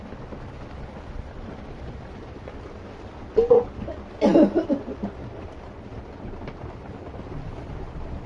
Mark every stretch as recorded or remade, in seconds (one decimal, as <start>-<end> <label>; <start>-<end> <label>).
0.0-8.3 recorded